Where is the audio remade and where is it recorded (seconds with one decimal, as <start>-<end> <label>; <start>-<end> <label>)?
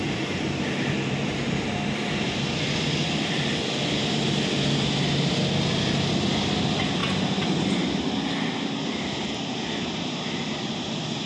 0.0-11.3 recorded